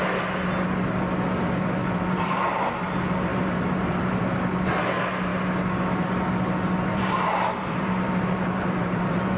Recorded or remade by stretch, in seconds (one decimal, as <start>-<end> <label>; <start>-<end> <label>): 0.0-1.8 recorded; 1.8-2.7 remade; 2.7-3.3 recorded; 3.3-4.2 remade; 4.2-6.9 recorded; 6.9-9.4 remade